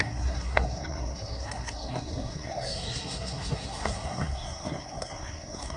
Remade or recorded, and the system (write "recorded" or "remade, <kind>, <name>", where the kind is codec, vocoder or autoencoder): remade, codec, SNAC